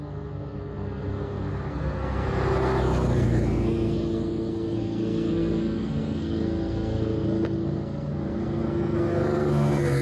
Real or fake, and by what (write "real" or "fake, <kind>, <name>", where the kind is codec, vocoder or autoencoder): fake, codec, SNAC